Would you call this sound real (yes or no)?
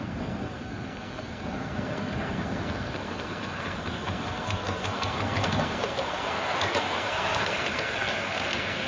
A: no